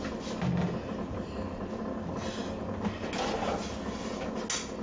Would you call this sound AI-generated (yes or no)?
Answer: no